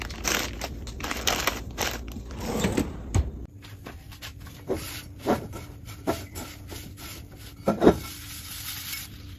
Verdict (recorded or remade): recorded